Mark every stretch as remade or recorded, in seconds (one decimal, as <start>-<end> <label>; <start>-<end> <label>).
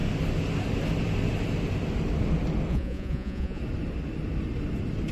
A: 0.0-2.7 recorded; 2.7-3.6 remade; 3.6-5.1 recorded